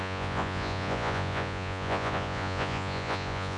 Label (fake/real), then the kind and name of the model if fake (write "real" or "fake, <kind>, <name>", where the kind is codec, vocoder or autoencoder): fake, vocoder, Vocos